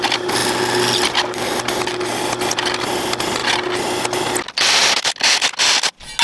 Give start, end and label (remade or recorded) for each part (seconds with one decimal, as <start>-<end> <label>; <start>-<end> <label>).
0.0-6.2 recorded